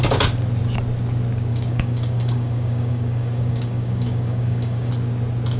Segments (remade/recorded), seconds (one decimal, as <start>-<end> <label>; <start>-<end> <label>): 0.0-1.5 recorded; 1.5-4.9 remade; 4.9-5.6 recorded